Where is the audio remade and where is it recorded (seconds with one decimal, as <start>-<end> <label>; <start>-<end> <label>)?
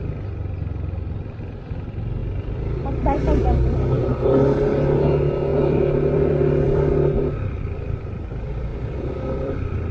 0.0-2.2 recorded; 2.2-4.1 remade; 4.1-5.5 recorded; 5.5-6.9 remade; 6.9-8.7 recorded; 8.7-9.9 remade